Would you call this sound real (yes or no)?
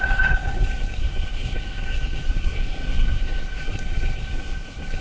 no